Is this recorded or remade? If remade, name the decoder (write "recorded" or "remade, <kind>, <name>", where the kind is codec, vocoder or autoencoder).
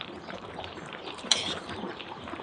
remade, vocoder, BigVGAN v2